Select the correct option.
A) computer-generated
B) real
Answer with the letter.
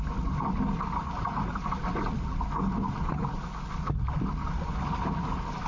B